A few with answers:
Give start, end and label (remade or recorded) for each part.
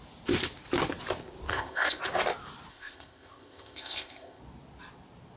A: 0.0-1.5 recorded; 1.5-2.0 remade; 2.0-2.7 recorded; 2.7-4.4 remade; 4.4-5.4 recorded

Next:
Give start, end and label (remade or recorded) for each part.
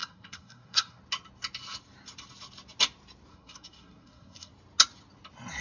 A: 0.0-1.0 remade; 1.0-3.3 recorded; 3.3-4.5 remade; 4.5-5.6 recorded